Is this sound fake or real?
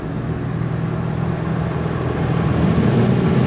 real